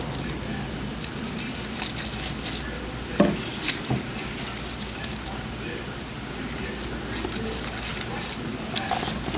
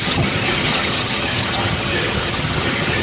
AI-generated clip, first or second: second